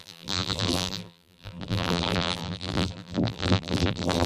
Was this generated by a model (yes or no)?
yes